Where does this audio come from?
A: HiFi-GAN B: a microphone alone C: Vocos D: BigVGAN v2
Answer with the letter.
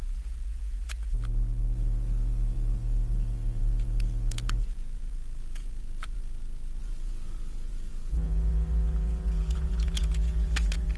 C